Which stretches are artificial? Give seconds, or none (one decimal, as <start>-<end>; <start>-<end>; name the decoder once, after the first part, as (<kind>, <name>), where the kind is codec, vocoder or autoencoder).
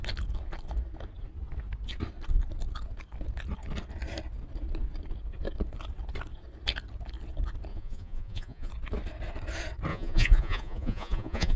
7.7-8.7 (vocoder, Vocos); 9.9-11.6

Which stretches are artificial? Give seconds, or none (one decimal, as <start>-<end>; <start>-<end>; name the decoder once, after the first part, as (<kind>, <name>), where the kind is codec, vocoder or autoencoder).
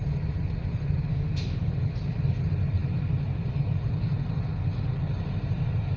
1.1-1.7 (autoencoder, DAC-VAE)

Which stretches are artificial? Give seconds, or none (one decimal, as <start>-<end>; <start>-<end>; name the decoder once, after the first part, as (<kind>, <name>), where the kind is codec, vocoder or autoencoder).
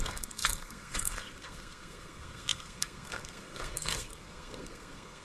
0.0-5.2 (codec, SNAC)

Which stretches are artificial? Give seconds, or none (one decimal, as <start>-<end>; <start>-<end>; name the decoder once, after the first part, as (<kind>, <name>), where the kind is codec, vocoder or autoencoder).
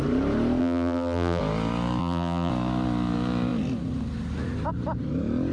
0.6-1.4 (vocoder, BigVGAN v2); 2.0-2.5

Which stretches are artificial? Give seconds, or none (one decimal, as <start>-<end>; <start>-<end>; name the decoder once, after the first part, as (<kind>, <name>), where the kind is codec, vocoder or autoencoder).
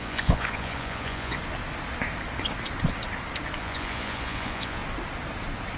0.0-1.4 (vocoder, Vocos); 3.6-4.8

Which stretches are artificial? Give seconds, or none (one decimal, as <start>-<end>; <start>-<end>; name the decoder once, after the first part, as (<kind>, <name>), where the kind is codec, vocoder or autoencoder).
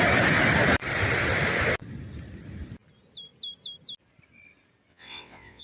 4.9-5.6 (vocoder, WaveNeXt)